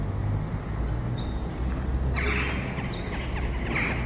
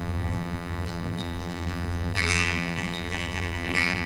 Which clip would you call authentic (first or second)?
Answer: first